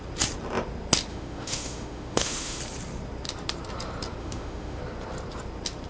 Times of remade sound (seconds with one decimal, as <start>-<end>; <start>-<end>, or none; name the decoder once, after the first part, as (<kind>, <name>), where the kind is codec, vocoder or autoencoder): 1.1-2.6 (autoencoder, DAC-VAE); 4.2-4.8